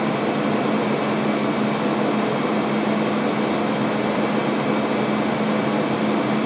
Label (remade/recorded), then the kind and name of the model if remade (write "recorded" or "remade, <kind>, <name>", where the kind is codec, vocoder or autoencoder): recorded